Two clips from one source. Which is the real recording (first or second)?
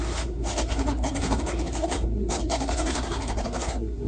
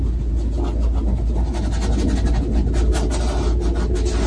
second